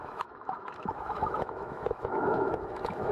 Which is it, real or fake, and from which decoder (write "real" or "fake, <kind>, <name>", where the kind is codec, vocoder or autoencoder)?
fake, autoencoder, DAC-VAE